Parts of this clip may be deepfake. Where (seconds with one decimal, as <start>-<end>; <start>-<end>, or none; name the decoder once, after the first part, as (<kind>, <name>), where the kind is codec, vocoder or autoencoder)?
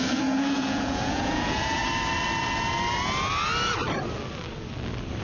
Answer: 0.0-1.8 (vocoder, Vocos)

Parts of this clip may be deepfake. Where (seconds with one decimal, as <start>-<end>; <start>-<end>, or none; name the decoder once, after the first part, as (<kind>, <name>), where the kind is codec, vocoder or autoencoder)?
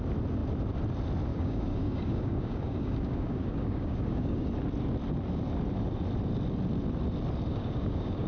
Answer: 1.3-4.5 (codec, DAC); 7.5-8.3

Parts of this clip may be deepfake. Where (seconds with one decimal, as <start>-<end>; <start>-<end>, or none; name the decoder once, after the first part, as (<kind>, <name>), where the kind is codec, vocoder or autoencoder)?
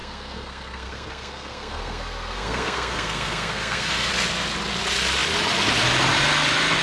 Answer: 0.0-4.1 (codec, SNAC)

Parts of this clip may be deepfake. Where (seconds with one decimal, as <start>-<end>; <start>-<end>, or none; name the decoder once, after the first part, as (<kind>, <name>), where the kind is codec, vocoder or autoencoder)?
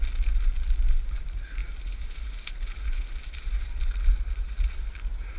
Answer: none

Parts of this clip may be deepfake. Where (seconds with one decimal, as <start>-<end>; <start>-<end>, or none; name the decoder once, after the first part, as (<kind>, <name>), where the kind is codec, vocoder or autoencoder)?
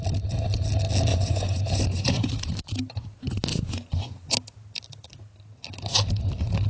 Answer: 1.1-2.3 (vocoder, Vocos); 3.5-4.3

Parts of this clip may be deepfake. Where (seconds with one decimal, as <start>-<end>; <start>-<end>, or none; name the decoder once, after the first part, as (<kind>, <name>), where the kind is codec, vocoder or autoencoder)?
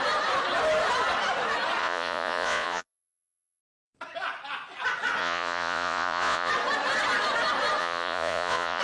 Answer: 1.8-3.6 (vocoder, Vocos); 5.2-6.5; 7.8-8.8